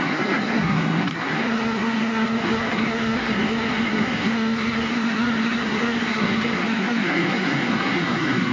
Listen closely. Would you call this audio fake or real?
fake